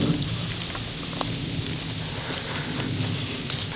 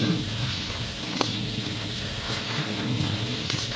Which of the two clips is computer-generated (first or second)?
second